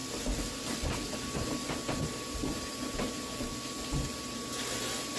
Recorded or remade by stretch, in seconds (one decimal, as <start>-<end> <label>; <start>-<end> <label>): 0.0-5.2 recorded